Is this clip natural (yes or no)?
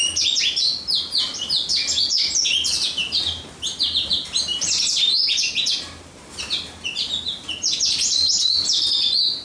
yes